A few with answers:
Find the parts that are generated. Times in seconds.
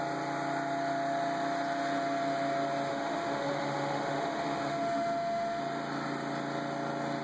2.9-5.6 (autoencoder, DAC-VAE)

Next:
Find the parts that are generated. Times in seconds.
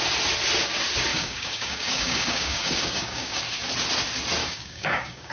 1.1-3.4 (codec, DAC); 4.4-5.3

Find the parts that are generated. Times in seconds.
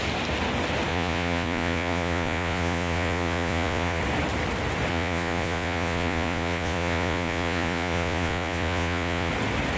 0.9-4.0 (vocoder, Vocos); 4.9-9.3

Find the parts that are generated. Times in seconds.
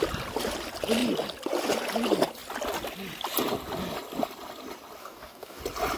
5.0-5.6 (codec, DAC)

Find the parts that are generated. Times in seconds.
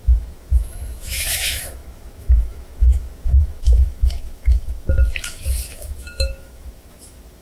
0.0-7.4 (autoencoder, DAC-VAE)